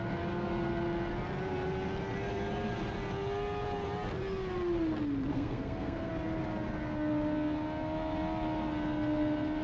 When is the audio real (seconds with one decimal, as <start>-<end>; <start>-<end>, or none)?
0.0-5.3; 6.1-9.6